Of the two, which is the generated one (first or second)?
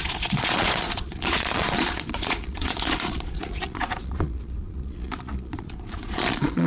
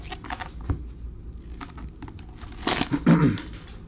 first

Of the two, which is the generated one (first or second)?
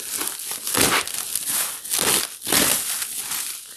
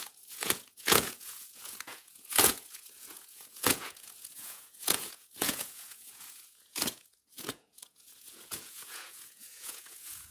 second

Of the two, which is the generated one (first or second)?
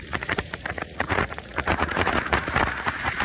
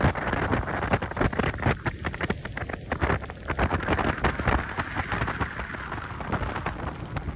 first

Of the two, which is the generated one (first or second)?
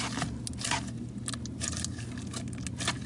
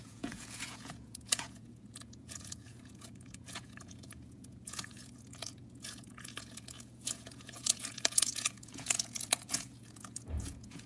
second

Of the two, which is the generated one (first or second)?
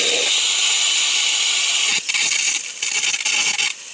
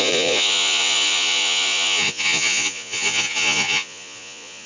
second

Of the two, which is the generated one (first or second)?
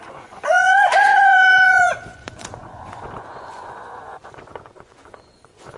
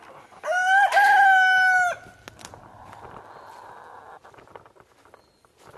first